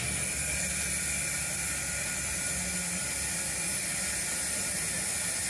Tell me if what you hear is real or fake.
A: real